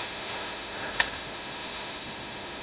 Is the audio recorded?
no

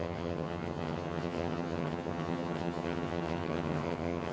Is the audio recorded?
no